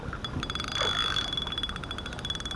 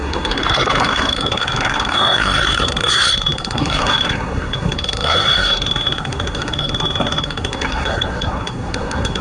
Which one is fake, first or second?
second